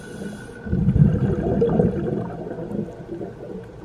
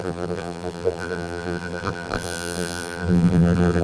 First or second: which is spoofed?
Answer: second